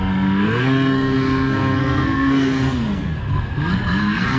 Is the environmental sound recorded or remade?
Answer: remade